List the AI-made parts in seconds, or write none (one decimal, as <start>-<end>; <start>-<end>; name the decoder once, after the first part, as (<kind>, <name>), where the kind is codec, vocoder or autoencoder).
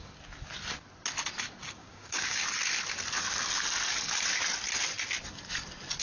1.8-2.4 (codec, DAC)